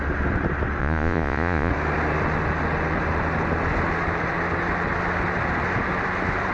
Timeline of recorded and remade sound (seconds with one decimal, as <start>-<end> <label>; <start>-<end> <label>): 0.0-0.8 recorded; 0.8-1.7 remade; 1.7-6.5 recorded